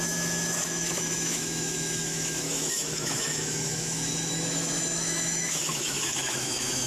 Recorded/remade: remade